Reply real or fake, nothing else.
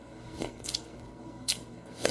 fake